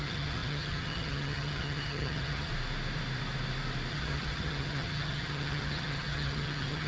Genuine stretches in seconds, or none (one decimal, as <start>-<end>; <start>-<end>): 2.5-3.9